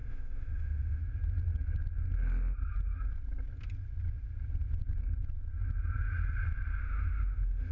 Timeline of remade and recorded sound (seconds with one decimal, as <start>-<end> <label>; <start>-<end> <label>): 0.0-1.0 remade; 1.0-6.8 recorded; 6.8-7.7 remade